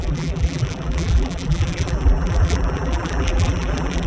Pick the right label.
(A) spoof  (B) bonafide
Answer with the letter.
A